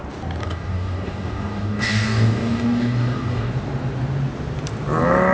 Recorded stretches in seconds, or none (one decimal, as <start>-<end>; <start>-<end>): 0.0-0.4; 3.5-5.3